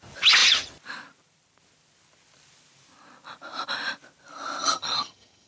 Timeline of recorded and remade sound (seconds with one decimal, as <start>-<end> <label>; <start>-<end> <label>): 0.0-4.6 recorded; 4.6-5.5 remade